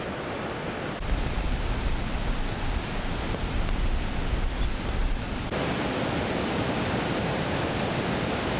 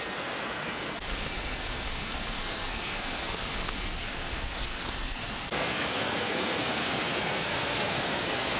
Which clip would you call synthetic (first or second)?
second